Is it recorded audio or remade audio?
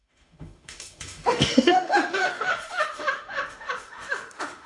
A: remade